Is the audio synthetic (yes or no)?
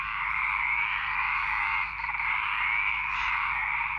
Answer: yes